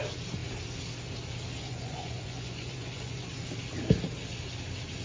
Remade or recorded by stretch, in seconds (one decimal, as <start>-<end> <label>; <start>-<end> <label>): 0.0-1.6 recorded; 1.6-3.3 remade; 3.3-5.0 recorded